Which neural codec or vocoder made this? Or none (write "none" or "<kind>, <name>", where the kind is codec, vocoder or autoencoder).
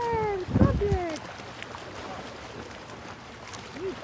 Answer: none